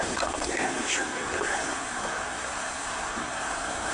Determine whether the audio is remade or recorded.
remade